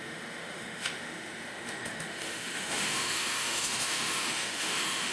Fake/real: fake